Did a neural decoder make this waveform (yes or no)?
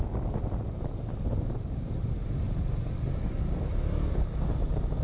no